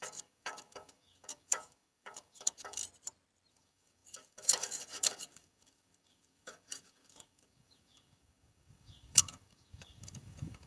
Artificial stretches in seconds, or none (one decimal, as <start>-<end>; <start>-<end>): 0.0-2.8; 3.5-10.7